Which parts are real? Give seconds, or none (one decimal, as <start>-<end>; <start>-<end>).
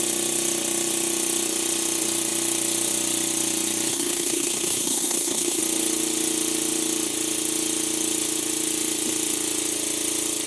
0.0-3.9; 5.6-10.5